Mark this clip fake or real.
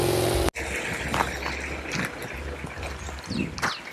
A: real